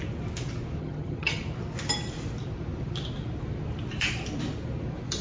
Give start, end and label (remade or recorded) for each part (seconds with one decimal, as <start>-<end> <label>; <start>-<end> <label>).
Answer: 0.0-0.8 recorded; 0.8-1.4 remade; 1.4-5.2 recorded